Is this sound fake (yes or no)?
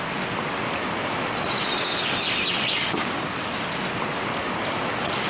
no